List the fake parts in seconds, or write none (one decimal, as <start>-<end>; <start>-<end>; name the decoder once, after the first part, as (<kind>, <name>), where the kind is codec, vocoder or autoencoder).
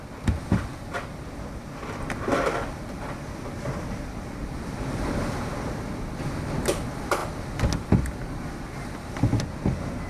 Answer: none